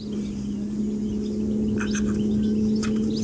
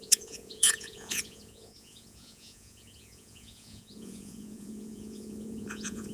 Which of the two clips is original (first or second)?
first